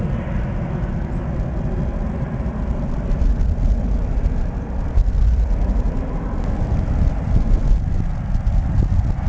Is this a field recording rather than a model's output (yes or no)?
yes